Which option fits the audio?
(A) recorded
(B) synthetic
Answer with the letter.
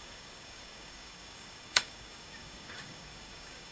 B